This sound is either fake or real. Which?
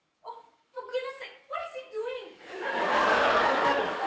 fake